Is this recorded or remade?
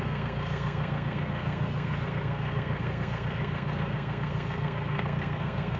remade